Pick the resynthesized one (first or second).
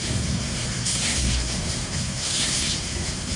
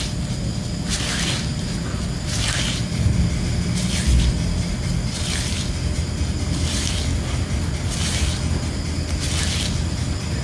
first